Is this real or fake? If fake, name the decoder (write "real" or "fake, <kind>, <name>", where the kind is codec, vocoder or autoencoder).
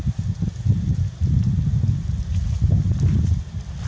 real